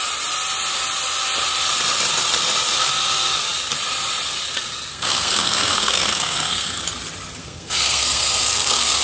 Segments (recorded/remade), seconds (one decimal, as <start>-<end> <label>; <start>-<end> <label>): 0.0-4.9 recorded; 4.9-6.8 remade; 6.8-7.4 recorded; 7.4-9.0 remade

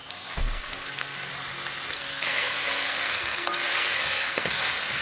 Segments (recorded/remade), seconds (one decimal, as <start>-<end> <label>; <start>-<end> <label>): 0.0-1.3 remade; 1.3-1.9 recorded; 1.9-5.0 remade

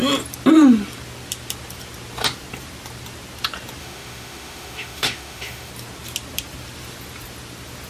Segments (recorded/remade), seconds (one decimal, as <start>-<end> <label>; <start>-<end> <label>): 0.0-3.8 recorded; 3.8-5.7 remade; 5.7-7.9 recorded

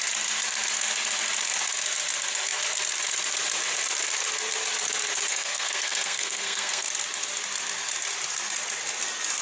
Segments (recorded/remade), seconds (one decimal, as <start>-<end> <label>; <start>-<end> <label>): 0.0-5.3 recorded; 5.3-6.9 remade; 6.9-9.4 recorded